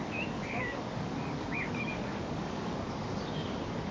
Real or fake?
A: fake